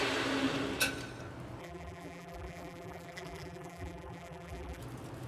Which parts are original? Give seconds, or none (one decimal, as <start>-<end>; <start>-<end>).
0.0-1.6; 4.8-5.3